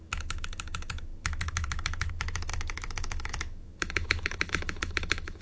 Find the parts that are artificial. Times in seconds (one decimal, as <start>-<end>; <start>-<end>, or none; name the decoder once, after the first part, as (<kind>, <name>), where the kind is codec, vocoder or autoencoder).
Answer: 0.0-5.4 (autoencoder, DAC-VAE)